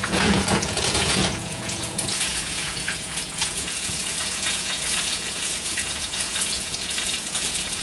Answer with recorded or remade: remade